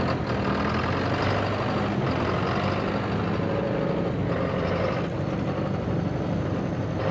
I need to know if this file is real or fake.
real